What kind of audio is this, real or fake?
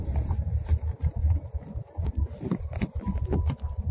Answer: real